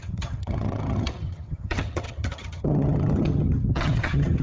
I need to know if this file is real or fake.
fake